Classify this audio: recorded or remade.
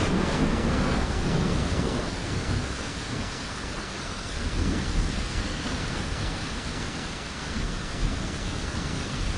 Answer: remade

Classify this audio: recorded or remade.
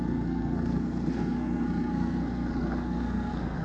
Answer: remade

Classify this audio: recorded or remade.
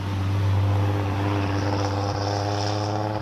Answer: recorded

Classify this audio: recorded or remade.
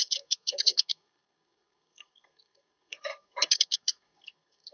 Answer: remade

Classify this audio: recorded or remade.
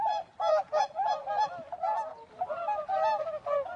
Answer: recorded